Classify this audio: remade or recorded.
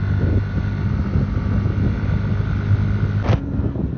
recorded